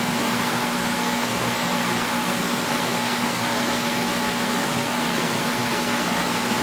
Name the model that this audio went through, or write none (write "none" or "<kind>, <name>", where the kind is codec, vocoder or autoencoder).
codec, SNAC